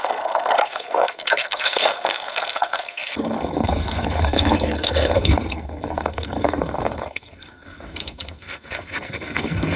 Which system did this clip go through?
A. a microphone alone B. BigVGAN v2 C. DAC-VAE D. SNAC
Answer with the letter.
D